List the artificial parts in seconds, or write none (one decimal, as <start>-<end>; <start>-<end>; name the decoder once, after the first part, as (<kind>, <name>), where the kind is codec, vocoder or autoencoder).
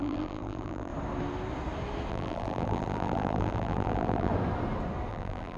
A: 0.0-0.9 (vocoder, BigVGAN v2); 2.1-4.3; 5.1-5.6